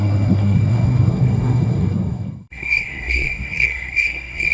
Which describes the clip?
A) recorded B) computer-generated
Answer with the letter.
B